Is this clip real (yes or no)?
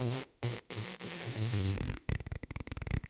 no